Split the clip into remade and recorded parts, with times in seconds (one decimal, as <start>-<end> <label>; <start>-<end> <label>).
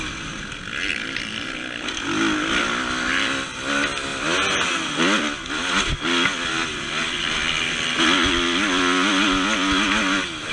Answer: 0.0-10.5 recorded